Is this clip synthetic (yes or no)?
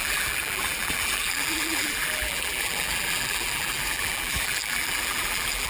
yes